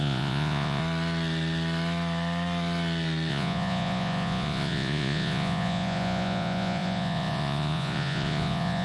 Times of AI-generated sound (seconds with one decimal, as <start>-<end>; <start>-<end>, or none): 0.0-0.8; 3.3-8.8